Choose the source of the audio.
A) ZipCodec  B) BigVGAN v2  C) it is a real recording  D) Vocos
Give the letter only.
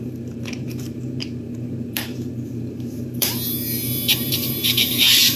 B